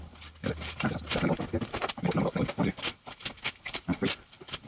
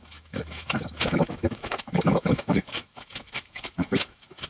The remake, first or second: second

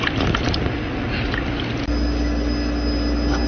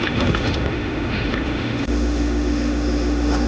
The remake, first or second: second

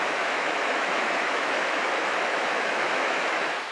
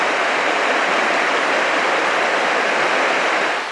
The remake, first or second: first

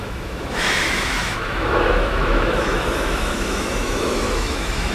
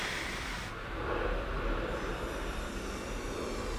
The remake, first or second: first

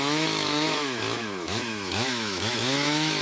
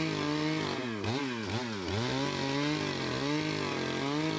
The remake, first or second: first